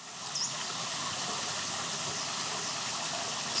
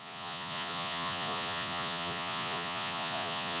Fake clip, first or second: second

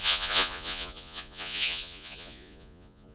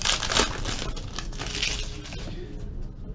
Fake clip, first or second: first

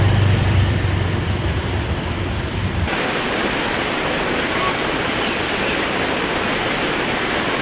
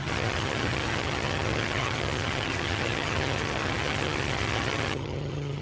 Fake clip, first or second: second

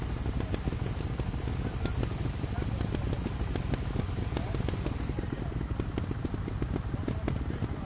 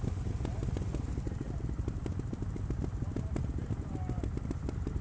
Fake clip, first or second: second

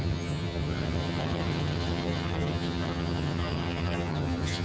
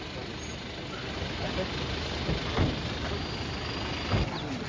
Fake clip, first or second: first